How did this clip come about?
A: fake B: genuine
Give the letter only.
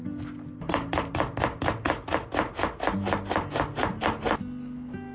B